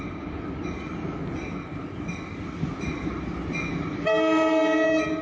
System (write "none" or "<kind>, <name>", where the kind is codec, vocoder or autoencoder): none